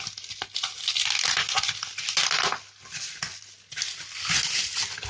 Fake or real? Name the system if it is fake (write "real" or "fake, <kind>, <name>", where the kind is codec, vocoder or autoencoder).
real